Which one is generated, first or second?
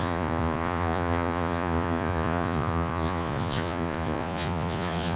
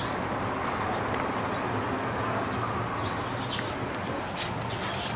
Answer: first